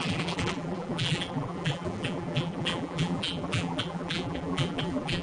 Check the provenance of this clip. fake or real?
fake